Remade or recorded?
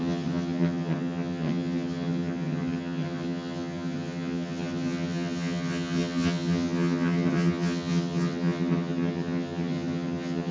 remade